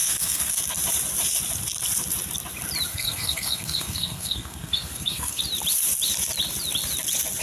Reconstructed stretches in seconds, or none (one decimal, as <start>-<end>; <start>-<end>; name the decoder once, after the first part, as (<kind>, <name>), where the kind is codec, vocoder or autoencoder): 0.0-0.6 (codec, SNAC); 2.9-5.4

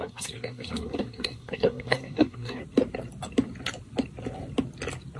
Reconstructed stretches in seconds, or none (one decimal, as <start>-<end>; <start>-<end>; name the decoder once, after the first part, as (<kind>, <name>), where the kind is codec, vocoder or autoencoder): 0.0-2.6 (codec, SNAC)